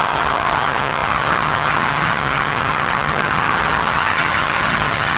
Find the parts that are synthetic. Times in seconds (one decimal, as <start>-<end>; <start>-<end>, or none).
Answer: 0.0-5.2